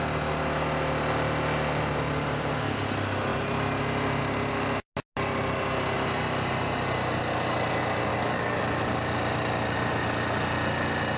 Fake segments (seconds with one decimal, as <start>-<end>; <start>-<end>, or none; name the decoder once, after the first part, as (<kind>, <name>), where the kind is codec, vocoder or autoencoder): 8.1-8.6 (codec, DAC)